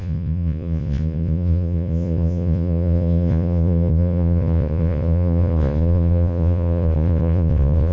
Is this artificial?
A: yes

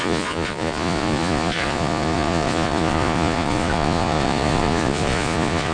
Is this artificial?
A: yes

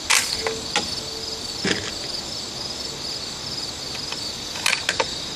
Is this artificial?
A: no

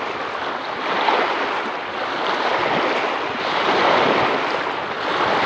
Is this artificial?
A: no